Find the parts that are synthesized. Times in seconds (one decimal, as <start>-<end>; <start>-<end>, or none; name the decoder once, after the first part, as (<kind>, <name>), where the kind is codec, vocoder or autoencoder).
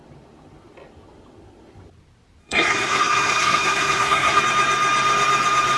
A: 2.4-4.4 (codec, SNAC)